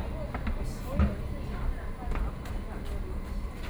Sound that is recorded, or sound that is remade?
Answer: recorded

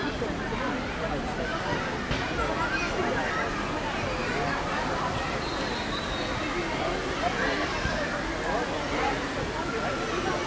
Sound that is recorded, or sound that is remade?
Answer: recorded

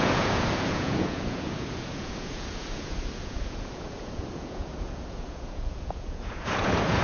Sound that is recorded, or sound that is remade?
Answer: remade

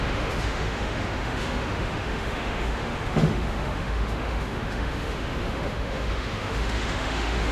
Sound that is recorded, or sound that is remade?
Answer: remade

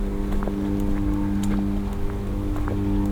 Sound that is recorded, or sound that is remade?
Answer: recorded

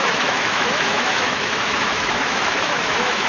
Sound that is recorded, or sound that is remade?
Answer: remade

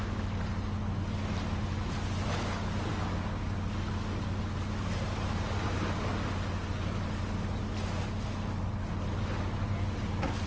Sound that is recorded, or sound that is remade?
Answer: recorded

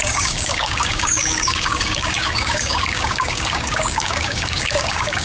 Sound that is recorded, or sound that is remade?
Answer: remade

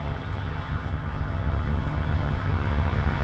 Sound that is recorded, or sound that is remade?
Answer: remade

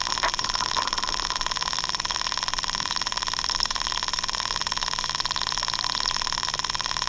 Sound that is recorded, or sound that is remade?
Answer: recorded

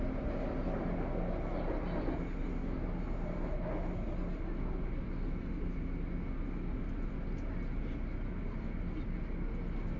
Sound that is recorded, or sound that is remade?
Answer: recorded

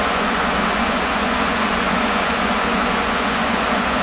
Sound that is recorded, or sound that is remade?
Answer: remade